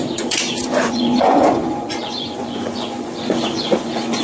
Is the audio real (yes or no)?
no